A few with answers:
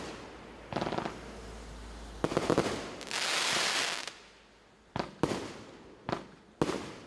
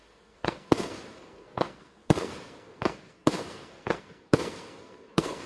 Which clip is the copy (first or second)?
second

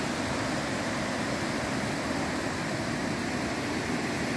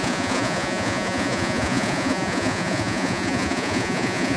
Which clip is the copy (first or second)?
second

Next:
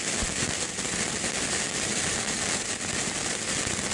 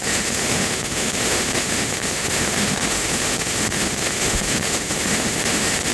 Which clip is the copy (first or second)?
second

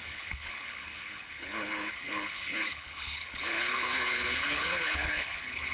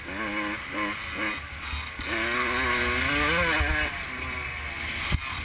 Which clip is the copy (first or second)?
first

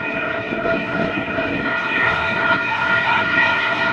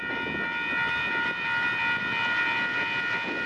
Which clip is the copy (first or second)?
first